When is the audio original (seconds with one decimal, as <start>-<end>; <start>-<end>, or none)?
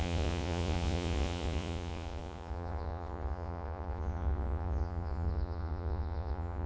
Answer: none